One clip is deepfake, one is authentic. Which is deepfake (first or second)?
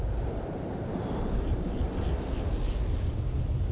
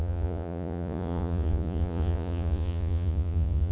second